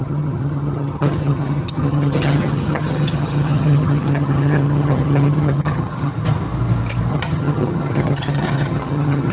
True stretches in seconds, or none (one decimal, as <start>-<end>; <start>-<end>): 6.1-7.1